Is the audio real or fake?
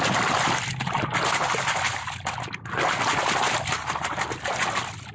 real